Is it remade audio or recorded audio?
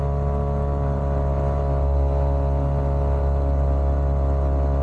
recorded